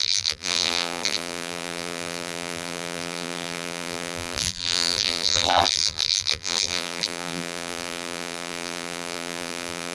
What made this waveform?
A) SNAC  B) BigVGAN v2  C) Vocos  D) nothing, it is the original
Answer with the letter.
B